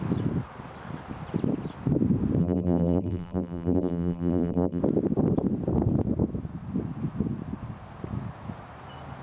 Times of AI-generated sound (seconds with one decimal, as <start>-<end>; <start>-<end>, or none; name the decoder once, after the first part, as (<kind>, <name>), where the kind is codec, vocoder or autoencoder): 2.4-4.8 (vocoder, BigVGAN v2)